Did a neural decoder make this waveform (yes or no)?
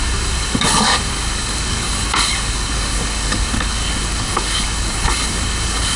yes